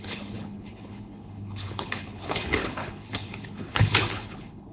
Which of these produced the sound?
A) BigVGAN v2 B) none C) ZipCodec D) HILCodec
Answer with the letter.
D